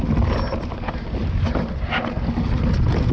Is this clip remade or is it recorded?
recorded